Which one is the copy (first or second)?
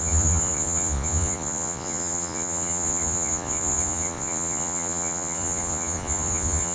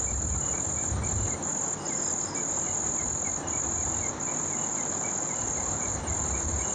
first